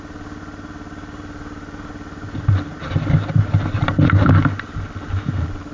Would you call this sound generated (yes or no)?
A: no